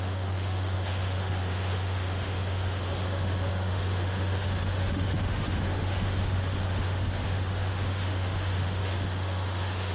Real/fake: fake